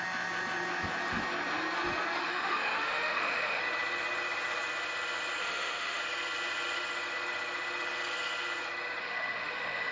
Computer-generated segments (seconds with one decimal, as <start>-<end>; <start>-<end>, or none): 2.2-3.6; 5.4-6.0; 9.0-9.9